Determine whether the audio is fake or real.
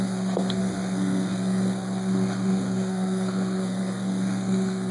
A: fake